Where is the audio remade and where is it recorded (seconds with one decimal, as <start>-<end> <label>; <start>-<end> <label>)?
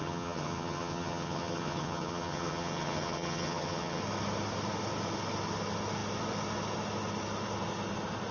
0.0-4.0 remade; 4.0-8.3 recorded